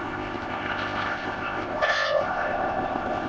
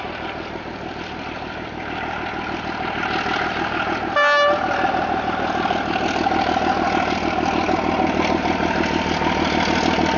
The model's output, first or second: first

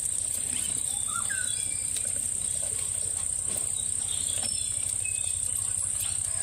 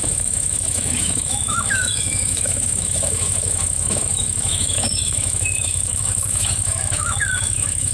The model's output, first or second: second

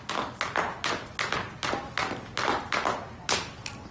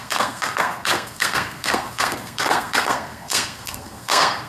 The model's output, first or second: second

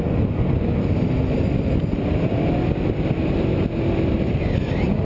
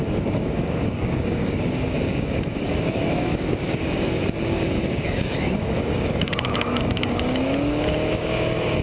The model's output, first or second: second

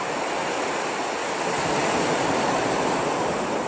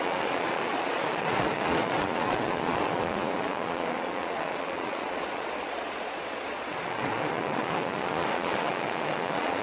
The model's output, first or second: second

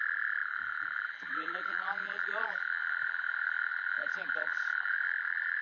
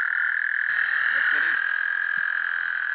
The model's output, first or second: first